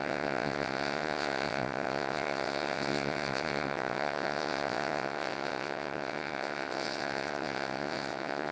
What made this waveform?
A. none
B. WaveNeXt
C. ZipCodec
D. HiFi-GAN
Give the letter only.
B